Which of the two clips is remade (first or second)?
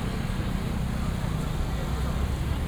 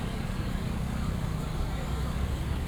second